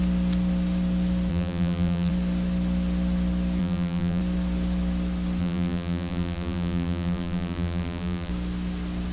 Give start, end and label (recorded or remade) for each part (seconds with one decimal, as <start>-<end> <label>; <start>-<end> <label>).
0.0-1.3 recorded; 1.3-2.1 remade; 2.1-3.6 recorded; 3.6-4.2 remade; 4.2-5.4 recorded; 5.4-8.3 remade; 8.3-9.1 recorded